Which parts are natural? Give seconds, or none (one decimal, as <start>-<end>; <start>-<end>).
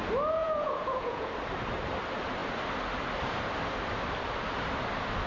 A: 0.0-0.4; 1.3-5.3